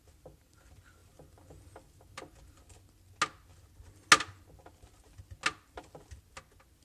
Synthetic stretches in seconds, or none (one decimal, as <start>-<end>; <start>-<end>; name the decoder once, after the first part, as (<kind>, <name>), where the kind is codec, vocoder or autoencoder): 1.0-2.6 (vocoder, BigVGAN v2)

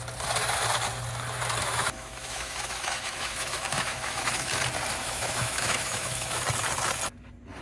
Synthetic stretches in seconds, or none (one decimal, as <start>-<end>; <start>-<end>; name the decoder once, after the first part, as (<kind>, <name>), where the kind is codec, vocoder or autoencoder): 1.6-4.5 (autoencoder, DAC-VAE); 5.0-6.4